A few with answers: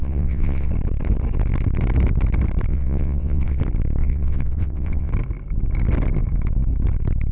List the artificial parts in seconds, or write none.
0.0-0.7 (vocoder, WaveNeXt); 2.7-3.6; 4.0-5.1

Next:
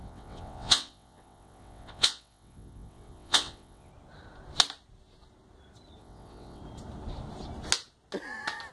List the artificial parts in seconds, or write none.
0.0-3.9 (vocoder, WaveNeXt); 6.0-6.6

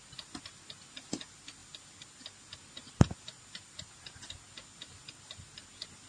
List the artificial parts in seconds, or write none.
none

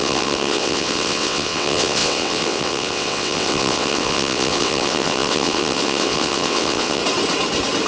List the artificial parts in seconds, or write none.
0.0-7.0 (vocoder, WaveNeXt)

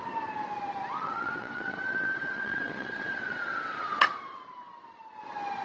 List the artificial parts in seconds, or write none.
1.0-4.4 (vocoder, WaveNeXt)